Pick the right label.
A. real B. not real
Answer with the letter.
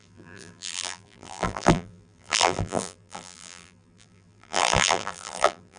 B